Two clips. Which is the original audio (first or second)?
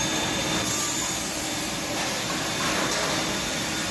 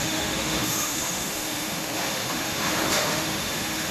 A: first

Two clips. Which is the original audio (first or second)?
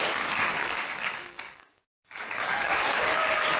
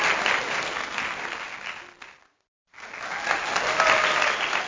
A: second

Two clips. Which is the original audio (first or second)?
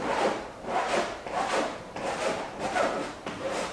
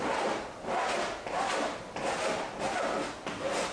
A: second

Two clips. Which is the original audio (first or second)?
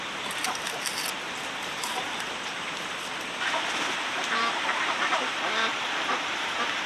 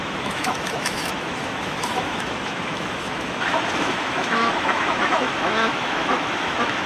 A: first